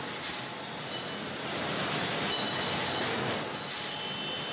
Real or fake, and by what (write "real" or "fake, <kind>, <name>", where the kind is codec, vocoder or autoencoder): real